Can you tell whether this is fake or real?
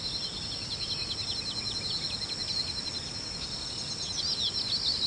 real